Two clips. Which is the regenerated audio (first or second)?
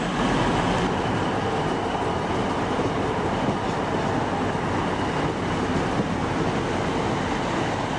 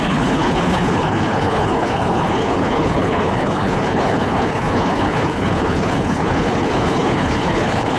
second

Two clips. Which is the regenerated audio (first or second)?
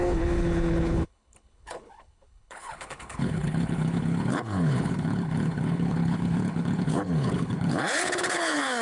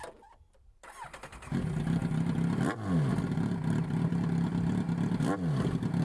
first